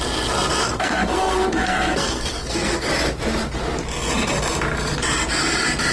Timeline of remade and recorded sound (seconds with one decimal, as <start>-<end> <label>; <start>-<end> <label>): 0.0-0.6 recorded; 0.6-2.9 remade; 2.9-5.9 recorded